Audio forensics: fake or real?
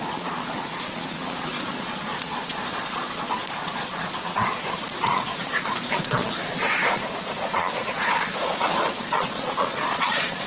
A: fake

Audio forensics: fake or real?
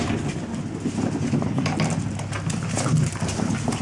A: real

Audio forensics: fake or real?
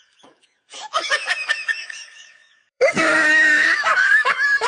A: fake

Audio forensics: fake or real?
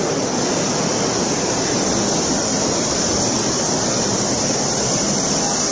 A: real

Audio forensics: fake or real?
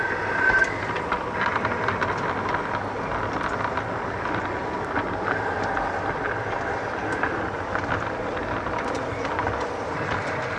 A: real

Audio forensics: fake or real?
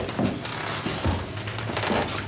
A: real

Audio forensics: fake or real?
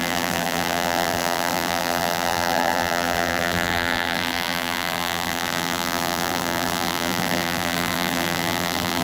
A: fake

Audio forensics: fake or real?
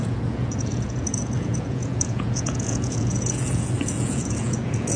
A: fake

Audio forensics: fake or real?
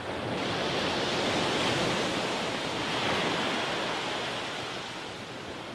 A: real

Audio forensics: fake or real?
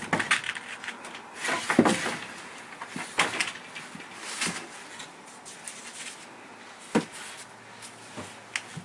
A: real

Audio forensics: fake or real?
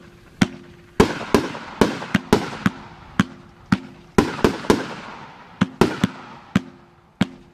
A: real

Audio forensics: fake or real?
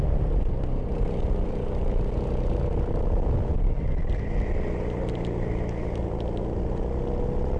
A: real